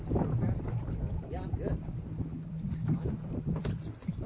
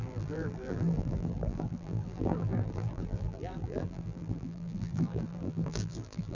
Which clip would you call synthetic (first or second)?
second